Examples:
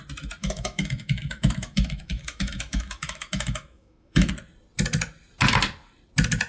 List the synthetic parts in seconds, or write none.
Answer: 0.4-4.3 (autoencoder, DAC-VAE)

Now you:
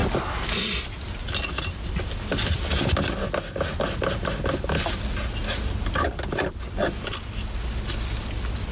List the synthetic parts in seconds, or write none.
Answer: none

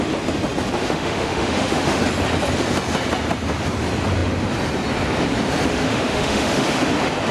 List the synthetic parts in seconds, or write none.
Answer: 0.8-2.0 (autoencoder, DAC-VAE); 5.7-6.8

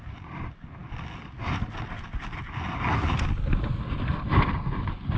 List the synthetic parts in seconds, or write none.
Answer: none

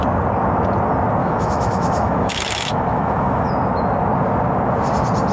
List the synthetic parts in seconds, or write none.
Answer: 1.2-3.5 (autoencoder, DAC-VAE)